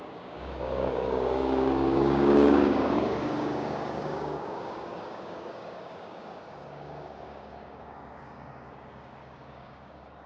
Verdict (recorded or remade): remade